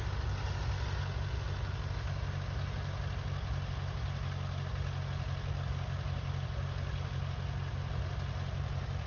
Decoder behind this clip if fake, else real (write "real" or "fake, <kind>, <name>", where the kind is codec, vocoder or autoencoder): real